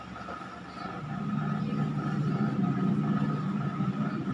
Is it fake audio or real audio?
real